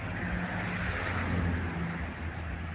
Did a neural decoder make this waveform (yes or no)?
no